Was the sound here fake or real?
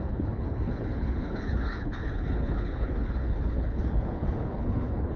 fake